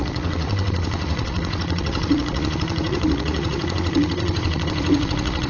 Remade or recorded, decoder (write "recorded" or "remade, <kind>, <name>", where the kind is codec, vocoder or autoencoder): remade, vocoder, WaveNeXt